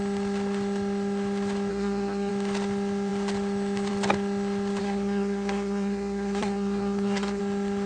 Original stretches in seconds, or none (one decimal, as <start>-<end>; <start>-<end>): 0.0-1.7; 2.3-4.8; 7.4-7.9